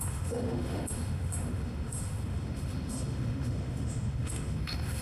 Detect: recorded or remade remade